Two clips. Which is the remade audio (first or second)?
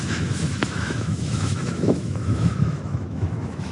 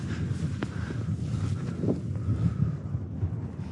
first